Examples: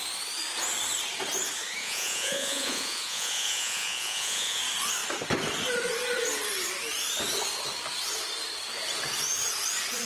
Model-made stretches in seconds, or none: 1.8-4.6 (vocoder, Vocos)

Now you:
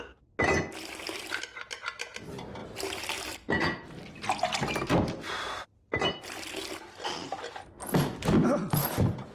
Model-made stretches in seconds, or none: none

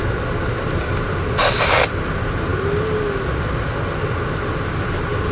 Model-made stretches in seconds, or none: none

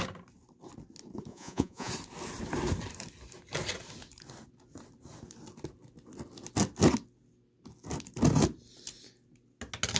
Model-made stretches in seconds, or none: 1.3-1.9 (vocoder, Vocos)

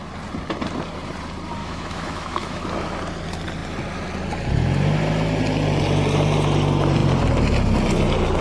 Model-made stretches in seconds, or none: 1.6-2.6 (autoencoder, DAC-VAE)

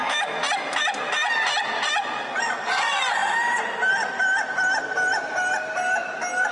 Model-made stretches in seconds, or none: none

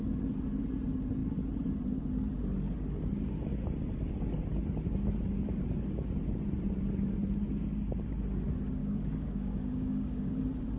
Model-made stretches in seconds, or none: 8.8-10.4 (codec, DAC)

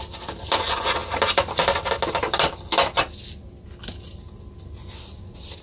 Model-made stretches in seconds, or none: none